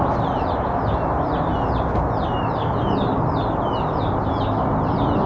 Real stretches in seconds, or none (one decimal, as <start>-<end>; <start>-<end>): 0.0-5.3